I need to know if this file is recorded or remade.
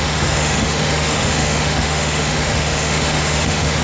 remade